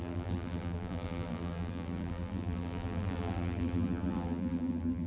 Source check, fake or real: fake